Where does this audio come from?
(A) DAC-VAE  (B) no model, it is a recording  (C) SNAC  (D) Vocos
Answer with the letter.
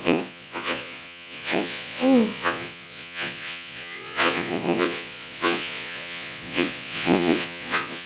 D